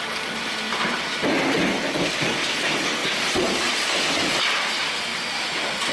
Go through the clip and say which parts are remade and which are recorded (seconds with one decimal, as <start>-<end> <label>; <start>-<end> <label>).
0.0-0.7 recorded; 0.7-1.3 remade; 1.3-3.0 recorded; 3.0-3.7 remade; 3.7-5.1 recorded; 5.1-5.9 remade